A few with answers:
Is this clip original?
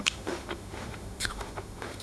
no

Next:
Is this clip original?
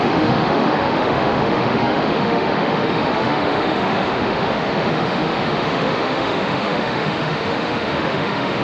no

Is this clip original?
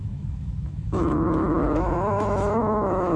no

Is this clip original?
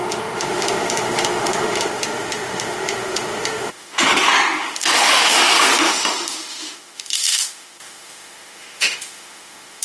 no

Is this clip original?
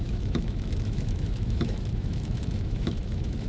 no